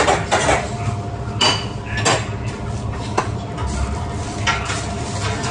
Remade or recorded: recorded